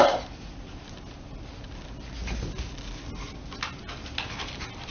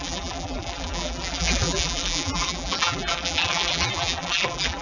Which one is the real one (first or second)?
first